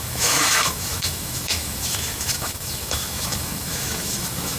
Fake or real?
fake